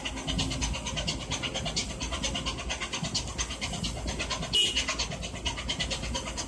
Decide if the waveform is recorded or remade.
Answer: recorded